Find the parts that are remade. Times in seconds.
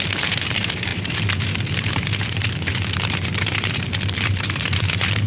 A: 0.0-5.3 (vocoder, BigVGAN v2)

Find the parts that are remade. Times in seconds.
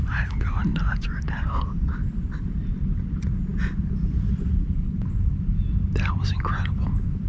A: 0.6-2.4 (vocoder, BigVGAN v2)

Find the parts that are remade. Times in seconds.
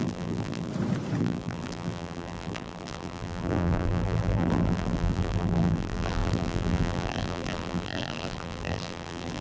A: 0.0-0.7 (vocoder, BigVGAN v2); 1.2-9.4